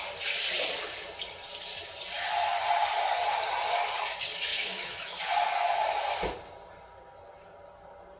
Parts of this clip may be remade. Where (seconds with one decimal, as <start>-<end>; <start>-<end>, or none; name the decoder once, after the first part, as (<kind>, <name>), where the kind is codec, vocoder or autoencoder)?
4.5-5.2 (autoencoder, DAC-VAE)